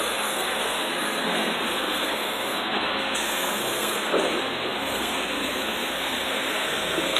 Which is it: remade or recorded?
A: remade